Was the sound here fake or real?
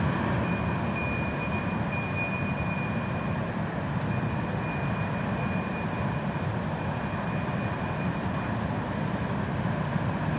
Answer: real